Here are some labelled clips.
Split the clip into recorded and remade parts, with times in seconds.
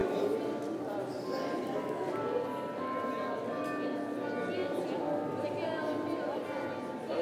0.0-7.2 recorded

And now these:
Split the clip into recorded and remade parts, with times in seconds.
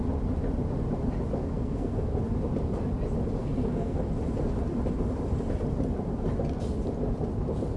0.0-1.4 recorded; 1.4-2.1 remade; 2.1-3.4 recorded; 3.4-4.0 remade; 4.0-7.8 recorded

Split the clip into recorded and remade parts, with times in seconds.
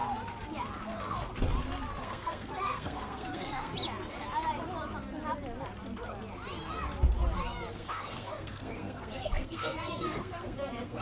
0.0-0.8 recorded; 0.8-1.3 remade; 1.3-2.0 recorded; 2.0-3.7 remade; 3.7-7.7 recorded; 7.7-11.0 remade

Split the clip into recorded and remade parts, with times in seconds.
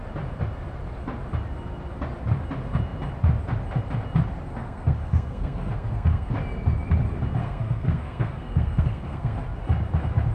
0.0-4.5 recorded; 4.5-6.3 remade; 6.3-7.4 recorded; 7.4-9.4 remade; 9.4-10.3 recorded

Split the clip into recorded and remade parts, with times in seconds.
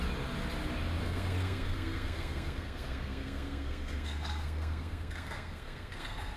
0.0-1.0 recorded; 1.0-6.4 remade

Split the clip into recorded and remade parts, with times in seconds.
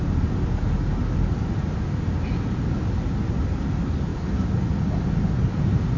0.0-6.0 recorded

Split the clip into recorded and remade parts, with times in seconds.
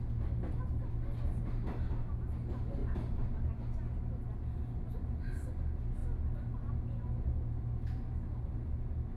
0.0-9.2 recorded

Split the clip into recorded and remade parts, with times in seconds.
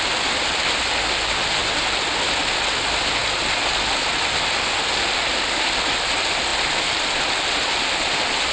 0.0-8.5 recorded